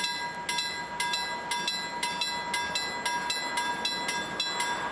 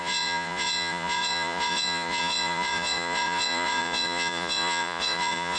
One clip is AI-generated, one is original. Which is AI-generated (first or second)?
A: second